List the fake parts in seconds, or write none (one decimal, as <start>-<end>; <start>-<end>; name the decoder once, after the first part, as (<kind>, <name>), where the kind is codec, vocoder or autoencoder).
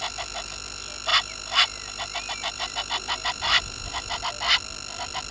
1.1-4.2 (vocoder, BigVGAN v2)